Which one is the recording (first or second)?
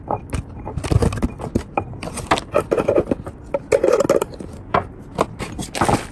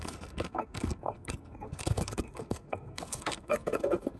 first